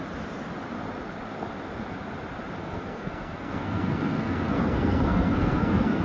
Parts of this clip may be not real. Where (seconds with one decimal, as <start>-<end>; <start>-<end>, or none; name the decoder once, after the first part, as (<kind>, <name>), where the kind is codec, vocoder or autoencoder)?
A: 2.6-6.0 (codec, SNAC)